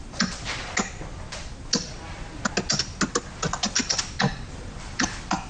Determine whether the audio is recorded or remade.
recorded